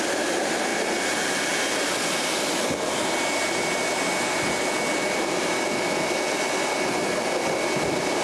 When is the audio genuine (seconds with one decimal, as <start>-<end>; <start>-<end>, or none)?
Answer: 0.0-8.2